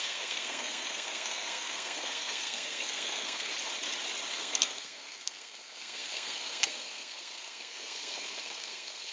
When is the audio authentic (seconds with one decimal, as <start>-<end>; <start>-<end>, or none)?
3.5-4.3